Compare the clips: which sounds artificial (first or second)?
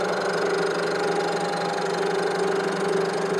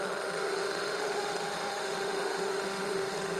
second